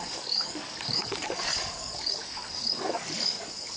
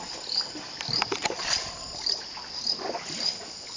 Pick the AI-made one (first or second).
first